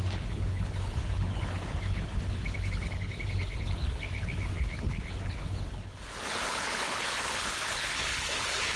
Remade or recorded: remade